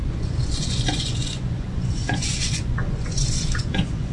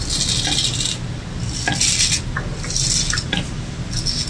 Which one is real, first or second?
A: second